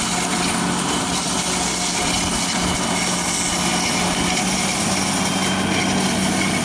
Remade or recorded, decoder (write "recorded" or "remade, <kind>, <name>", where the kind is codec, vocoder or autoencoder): recorded